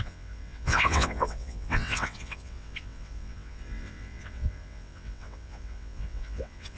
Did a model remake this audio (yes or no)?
yes